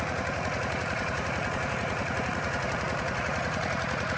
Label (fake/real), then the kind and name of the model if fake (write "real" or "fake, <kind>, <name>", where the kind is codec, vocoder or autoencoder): fake, vocoder, Vocos